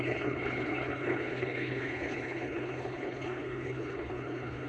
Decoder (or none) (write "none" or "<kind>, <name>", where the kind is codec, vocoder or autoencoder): codec, HILCodec